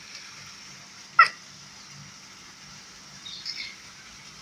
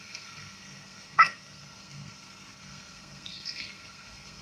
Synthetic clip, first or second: second